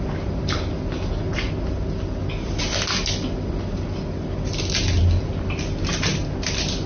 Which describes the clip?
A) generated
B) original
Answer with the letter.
B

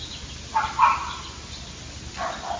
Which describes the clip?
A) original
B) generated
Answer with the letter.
A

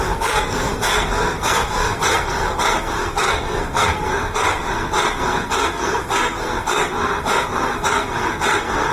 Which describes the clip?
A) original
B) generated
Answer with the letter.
B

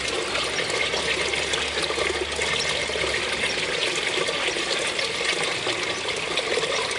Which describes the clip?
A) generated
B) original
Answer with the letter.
B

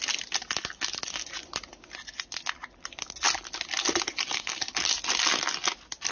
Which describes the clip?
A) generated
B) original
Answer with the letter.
B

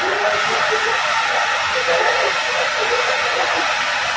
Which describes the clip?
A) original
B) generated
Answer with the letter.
A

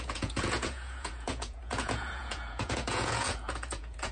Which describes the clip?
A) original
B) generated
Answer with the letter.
B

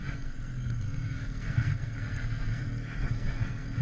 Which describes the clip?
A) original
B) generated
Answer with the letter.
B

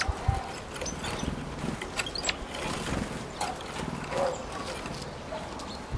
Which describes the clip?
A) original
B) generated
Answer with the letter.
A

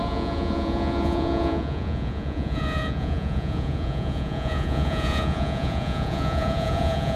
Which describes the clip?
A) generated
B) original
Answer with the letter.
A